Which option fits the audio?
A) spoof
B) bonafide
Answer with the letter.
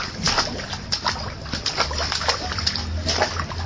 B